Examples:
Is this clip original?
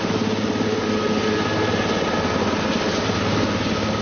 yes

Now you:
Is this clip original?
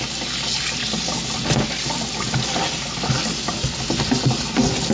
yes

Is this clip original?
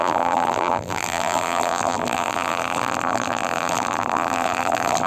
no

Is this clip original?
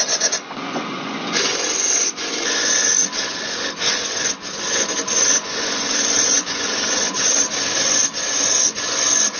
no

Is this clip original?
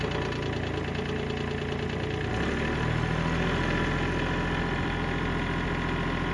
yes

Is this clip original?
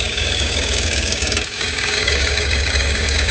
no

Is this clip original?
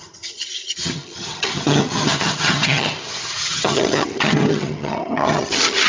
no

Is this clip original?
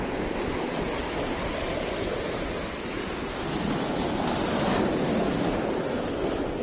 yes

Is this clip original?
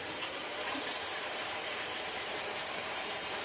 no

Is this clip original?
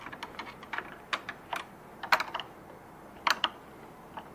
yes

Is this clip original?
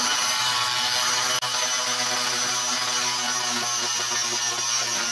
yes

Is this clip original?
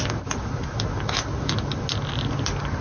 yes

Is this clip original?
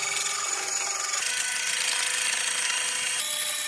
yes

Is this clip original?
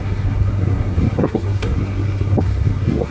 no